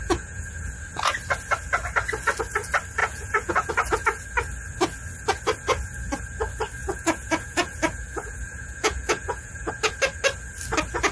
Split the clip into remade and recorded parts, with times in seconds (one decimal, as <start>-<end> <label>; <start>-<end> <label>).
0.0-0.7 remade; 0.7-3.0 recorded; 3.0-3.7 remade; 3.7-6.8 recorded; 6.8-9.7 remade; 9.7-11.1 recorded